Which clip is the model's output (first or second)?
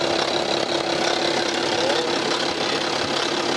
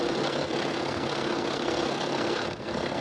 second